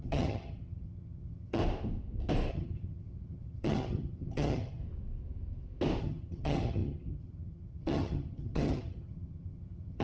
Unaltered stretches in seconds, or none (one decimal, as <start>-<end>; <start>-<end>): 1.6-2.5; 4.8-6.0